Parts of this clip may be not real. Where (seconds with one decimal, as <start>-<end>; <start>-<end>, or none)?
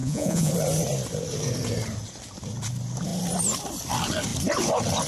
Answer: 0.0-0.5